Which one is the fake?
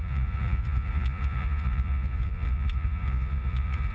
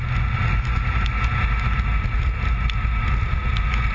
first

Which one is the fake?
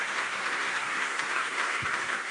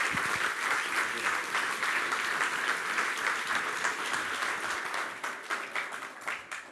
first